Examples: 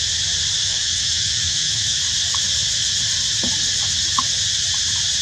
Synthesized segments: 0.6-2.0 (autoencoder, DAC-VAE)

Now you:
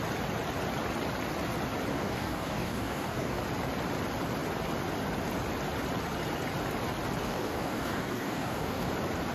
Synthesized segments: 1.9-3.4 (codec, DAC); 7.2-8.9

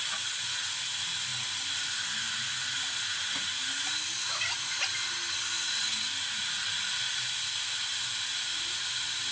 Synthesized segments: none

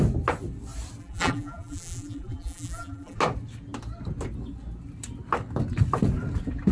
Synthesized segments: 1.0-3.2 (vocoder, BigVGAN v2)